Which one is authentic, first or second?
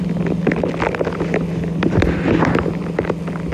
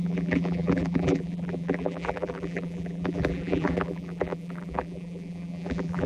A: first